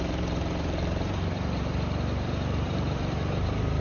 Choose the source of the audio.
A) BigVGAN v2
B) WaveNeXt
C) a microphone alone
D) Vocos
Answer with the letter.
A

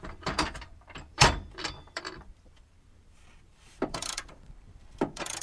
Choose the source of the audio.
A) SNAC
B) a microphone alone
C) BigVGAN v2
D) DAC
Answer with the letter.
C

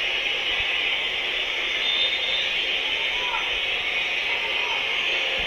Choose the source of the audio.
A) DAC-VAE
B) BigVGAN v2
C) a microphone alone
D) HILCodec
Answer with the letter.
C